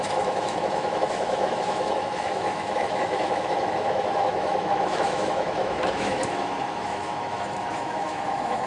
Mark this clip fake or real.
fake